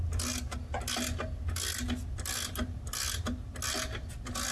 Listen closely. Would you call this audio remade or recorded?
recorded